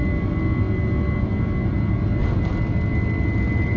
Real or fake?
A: real